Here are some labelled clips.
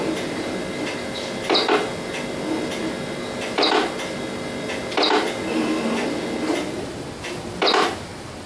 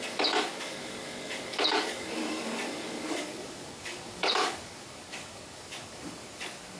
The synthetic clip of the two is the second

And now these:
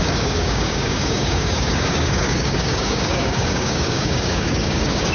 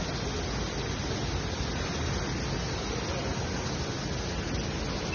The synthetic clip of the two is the first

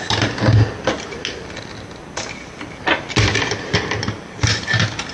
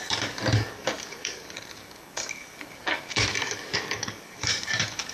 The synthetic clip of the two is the second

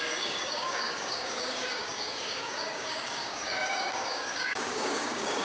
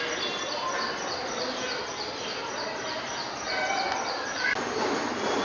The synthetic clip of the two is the first